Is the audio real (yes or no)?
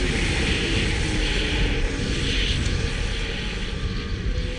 yes